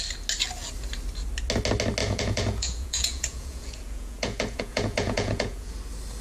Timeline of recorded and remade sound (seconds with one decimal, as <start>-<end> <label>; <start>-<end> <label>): 0.0-2.0 recorded; 2.0-5.7 remade; 5.7-6.2 recorded